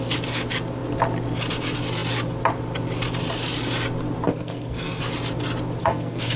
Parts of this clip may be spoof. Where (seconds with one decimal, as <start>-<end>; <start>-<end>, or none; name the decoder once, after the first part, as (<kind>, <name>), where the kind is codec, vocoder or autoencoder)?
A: 4.3-5.0 (codec, SNAC); 5.8-6.4